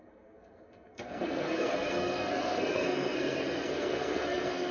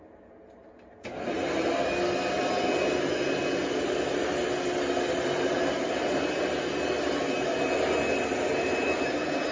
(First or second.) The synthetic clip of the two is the first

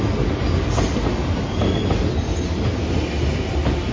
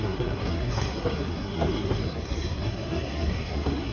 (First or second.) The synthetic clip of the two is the second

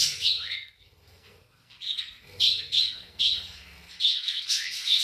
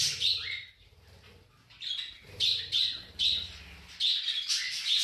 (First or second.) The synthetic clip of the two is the first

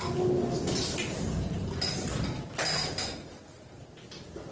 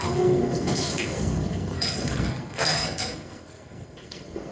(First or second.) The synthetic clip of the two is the second